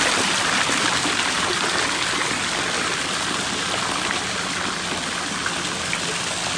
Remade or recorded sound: recorded